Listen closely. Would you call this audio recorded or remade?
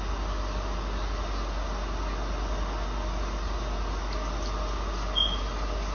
recorded